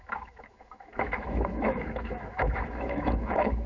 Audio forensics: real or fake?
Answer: fake